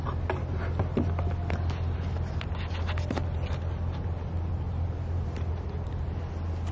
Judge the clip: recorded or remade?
recorded